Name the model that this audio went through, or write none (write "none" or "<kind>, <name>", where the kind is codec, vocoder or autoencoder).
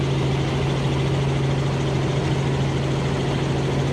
none